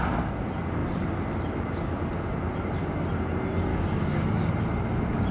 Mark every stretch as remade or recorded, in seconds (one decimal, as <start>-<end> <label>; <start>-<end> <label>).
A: 0.0-3.7 recorded; 3.7-4.5 remade; 4.5-5.3 recorded